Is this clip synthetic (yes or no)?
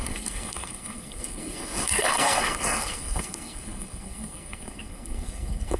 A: yes